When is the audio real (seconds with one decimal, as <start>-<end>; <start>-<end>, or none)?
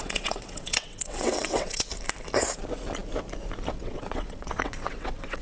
1.9-3.7